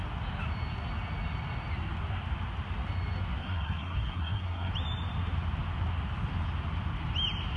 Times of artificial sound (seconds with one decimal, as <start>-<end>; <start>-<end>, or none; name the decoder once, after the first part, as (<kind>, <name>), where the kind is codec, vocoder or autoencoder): 3.4-4.7 (codec, SNAC)